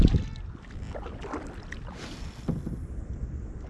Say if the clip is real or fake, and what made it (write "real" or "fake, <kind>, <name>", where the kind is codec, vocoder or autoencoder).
real